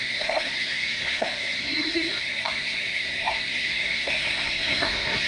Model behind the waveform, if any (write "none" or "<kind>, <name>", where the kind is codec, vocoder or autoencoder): codec, SNAC